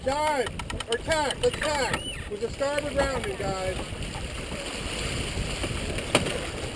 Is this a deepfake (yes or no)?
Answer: no